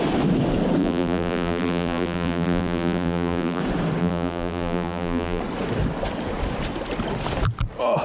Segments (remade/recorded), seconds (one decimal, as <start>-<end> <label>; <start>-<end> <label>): 0.0-0.8 recorded; 0.8-3.6 remade; 3.6-4.0 recorded; 4.0-5.4 remade; 5.4-8.0 recorded